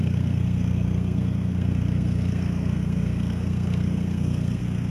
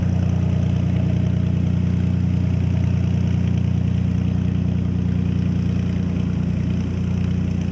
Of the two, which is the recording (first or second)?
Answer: second